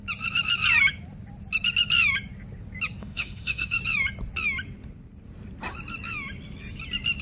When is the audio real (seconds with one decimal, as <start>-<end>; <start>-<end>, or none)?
0.0-3.0; 3.8-7.2

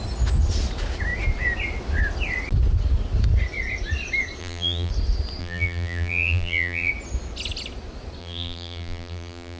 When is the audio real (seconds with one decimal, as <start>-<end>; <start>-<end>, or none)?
0.0-4.4; 4.9-5.4; 6.9-8.2

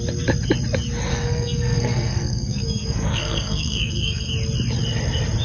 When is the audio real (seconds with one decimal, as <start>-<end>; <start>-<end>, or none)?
0.0-1.1; 4.3-5.4

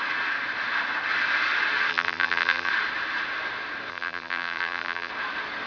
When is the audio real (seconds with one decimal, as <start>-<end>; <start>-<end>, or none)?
0.0-1.9; 2.7-3.9; 5.1-5.7

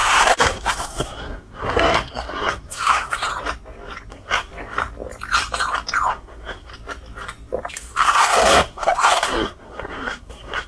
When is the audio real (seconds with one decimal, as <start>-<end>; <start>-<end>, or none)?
3.3-4.1; 4.5-6.1; 6.7-7.7